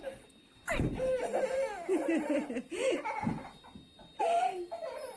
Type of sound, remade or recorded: recorded